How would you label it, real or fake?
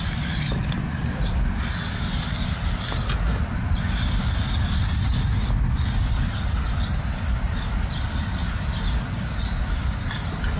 real